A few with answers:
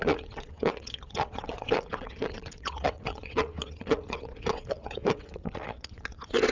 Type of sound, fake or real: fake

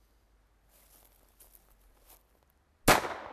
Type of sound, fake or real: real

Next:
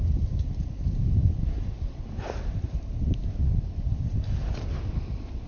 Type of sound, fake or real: real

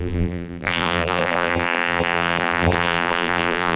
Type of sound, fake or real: fake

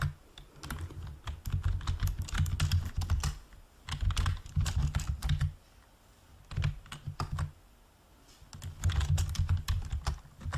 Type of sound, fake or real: real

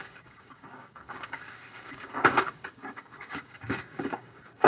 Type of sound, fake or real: fake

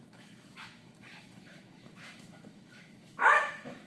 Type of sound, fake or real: fake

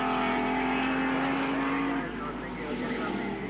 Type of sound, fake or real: real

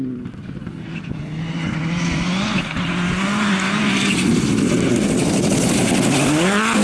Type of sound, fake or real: real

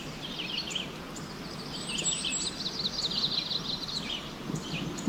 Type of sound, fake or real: real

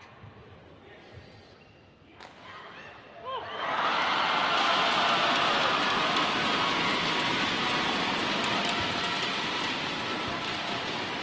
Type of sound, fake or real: real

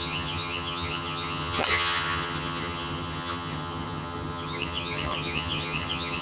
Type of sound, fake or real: fake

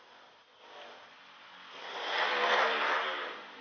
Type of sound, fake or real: real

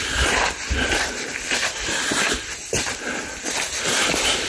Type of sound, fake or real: real